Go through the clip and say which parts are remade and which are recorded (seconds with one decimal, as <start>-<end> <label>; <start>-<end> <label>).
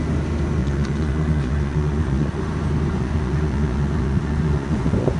0.0-0.6 recorded; 0.6-2.4 remade; 2.4-2.9 recorded; 2.9-5.2 remade